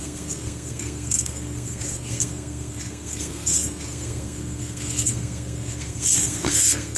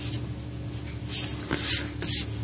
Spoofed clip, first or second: first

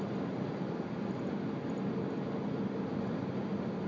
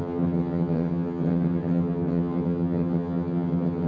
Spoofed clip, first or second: second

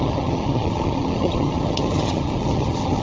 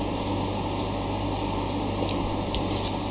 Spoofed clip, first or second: first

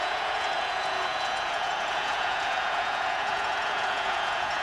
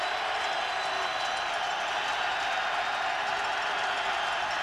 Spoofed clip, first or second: first